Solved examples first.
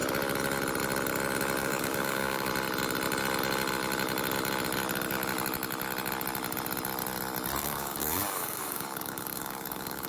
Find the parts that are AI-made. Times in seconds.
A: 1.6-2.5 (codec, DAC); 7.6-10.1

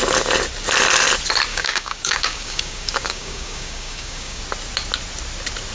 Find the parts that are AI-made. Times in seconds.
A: 1.5-4.4 (codec, DAC)